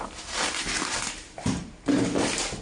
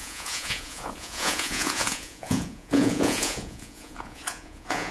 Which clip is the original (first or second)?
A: first